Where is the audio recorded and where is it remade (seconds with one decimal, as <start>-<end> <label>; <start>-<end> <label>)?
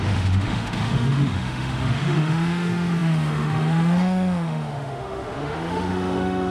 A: 0.0-6.5 remade